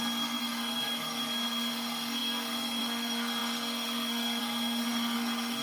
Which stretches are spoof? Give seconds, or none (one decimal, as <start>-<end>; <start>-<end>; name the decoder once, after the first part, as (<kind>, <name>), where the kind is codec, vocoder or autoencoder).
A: 0.0-5.6 (codec, SNAC)